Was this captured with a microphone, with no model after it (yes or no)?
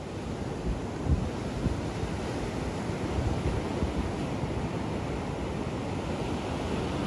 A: yes